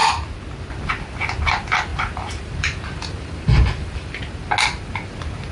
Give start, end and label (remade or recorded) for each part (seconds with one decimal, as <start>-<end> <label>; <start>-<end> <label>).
0.0-1.9 recorded; 1.9-4.2 remade; 4.2-5.5 recorded

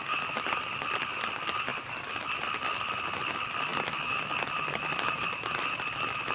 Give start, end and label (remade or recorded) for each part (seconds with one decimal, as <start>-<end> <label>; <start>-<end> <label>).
0.0-1.7 remade; 1.7-3.3 recorded; 3.3-3.7 remade; 3.7-5.5 recorded; 5.5-6.3 remade

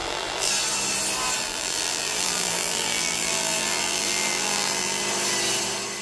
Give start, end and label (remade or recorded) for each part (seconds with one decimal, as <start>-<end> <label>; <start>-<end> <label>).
0.0-0.5 remade; 0.5-1.4 recorded; 1.4-5.0 remade; 5.0-6.0 recorded